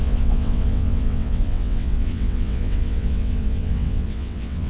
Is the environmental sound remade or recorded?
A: remade